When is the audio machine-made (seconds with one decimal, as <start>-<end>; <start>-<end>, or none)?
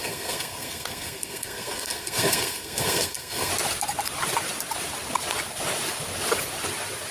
0.0-3.5